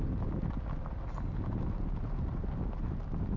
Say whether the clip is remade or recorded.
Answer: recorded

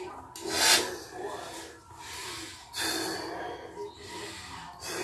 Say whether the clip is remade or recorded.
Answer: recorded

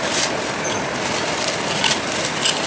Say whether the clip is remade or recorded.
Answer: recorded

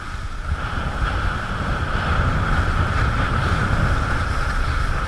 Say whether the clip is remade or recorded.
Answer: recorded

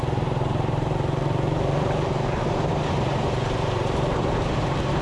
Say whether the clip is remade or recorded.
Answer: remade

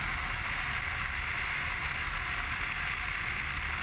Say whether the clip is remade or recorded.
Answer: recorded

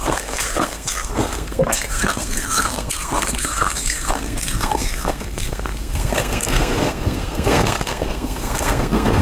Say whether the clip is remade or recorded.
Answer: remade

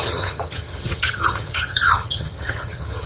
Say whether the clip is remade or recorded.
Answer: remade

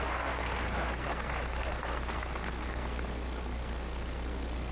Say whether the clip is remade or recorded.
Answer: remade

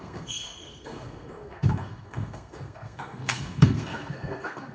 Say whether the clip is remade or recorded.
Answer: remade